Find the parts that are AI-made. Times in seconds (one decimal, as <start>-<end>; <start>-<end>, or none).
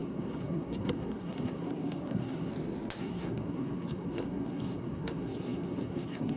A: 0.0-2.5; 3.0-6.4